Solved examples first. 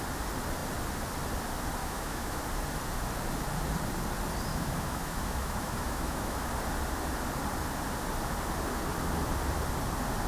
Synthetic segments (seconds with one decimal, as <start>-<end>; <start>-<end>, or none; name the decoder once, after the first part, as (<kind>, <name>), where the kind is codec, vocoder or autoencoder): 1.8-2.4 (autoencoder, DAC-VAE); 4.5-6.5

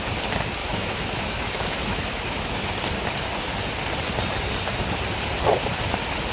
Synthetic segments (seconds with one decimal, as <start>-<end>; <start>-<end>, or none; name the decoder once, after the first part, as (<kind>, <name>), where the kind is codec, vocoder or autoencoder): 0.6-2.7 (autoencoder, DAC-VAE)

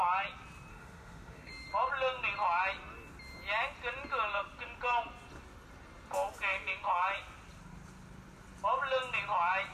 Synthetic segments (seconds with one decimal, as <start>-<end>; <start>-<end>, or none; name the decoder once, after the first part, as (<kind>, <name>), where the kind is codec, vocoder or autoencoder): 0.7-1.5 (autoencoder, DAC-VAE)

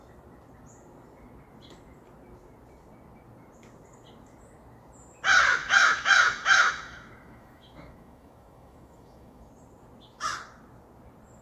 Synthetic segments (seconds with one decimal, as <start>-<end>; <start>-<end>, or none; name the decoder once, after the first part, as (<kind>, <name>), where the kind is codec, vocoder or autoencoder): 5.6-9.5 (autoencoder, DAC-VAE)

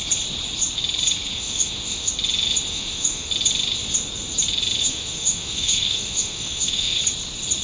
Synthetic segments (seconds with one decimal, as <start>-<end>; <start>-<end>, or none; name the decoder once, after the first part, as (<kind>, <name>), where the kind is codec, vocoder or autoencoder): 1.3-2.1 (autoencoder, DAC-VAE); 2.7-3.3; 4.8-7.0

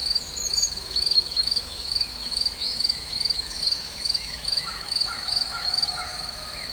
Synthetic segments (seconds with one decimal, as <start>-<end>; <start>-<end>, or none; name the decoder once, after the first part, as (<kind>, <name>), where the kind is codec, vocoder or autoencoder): 0.0-6.7 (autoencoder, DAC-VAE)

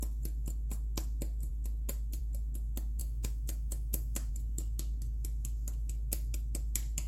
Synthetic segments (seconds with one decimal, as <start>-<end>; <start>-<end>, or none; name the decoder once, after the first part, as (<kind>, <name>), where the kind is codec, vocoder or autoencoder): 3.0-4.3 (autoencoder, DAC-VAE)